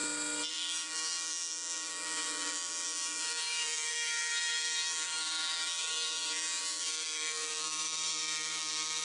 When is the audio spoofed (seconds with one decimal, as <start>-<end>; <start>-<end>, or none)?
0.5-9.0